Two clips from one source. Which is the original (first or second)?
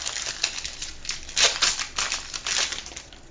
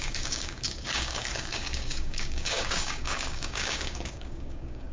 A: first